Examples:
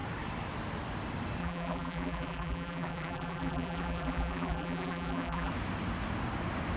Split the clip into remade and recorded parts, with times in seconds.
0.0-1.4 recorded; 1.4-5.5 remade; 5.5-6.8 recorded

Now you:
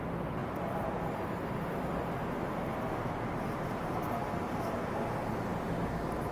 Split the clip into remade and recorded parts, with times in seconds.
0.0-0.4 recorded; 0.4-1.0 remade; 1.0-6.3 recorded